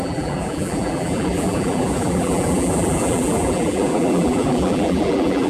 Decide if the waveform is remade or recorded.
remade